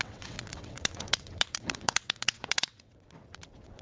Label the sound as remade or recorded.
remade